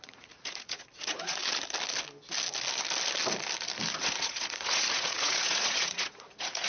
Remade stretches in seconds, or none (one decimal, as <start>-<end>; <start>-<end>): 0.0-1.4; 4.0-6.7